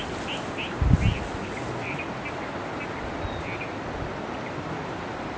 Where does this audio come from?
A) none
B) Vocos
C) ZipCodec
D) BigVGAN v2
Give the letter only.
A